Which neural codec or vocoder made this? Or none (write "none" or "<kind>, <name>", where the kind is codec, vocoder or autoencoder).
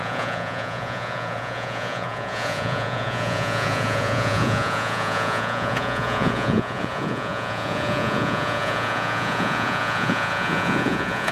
vocoder, Vocos